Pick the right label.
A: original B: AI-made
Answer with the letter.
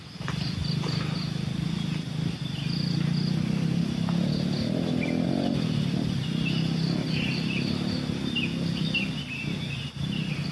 A